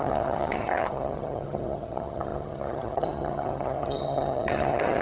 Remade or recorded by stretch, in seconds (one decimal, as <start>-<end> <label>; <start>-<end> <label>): 0.0-5.0 remade

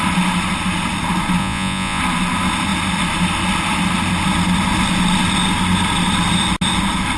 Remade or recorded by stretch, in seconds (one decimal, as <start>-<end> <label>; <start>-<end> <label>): 0.0-1.4 recorded; 1.4-2.0 remade; 2.0-7.2 recorded